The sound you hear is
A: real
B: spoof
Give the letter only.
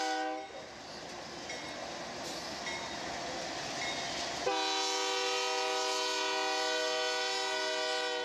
A